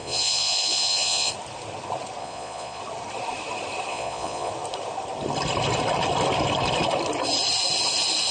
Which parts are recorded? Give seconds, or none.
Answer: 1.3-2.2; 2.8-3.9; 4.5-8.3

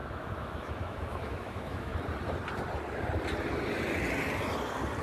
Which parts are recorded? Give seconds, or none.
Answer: 1.9-5.0

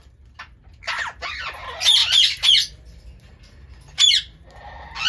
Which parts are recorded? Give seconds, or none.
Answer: 0.0-5.1

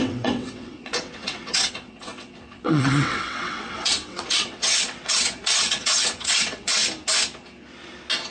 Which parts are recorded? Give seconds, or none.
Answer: 6.8-8.3

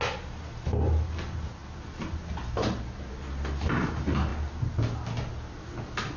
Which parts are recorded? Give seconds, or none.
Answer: 0.0-6.2

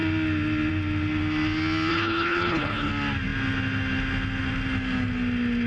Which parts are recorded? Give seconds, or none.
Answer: 0.0-1.9; 2.9-5.7